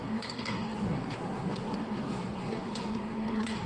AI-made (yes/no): yes